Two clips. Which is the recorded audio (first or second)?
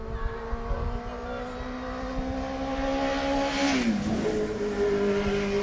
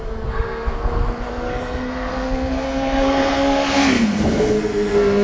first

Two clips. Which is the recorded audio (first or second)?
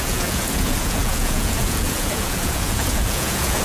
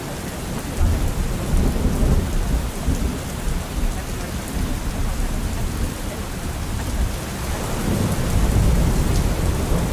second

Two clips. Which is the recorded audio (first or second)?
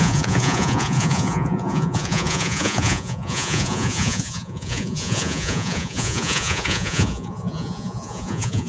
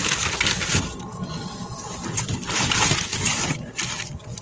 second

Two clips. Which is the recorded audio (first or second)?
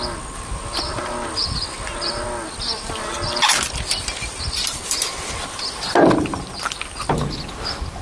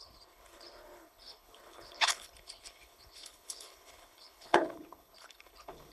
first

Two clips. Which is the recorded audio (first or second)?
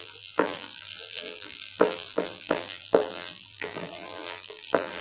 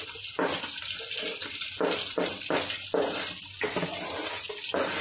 second